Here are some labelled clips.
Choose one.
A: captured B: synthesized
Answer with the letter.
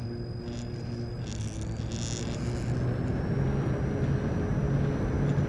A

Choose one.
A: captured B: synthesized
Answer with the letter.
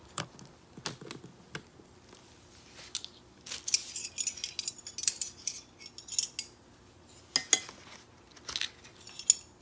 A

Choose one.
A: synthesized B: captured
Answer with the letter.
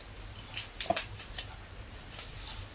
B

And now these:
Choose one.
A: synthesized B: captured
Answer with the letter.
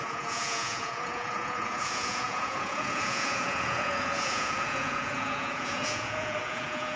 A